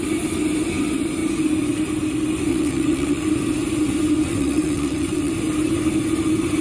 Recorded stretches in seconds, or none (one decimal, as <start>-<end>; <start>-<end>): 0.0-2.5; 3.3-4.3; 5.3-6.6